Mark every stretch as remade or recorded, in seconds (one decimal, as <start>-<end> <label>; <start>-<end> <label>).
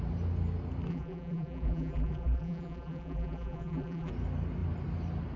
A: 0.0-0.9 recorded; 0.9-4.1 remade; 4.1-5.4 recorded